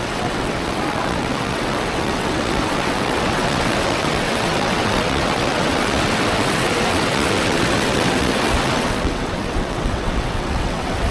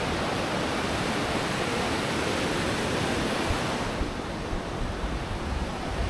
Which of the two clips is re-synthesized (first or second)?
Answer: first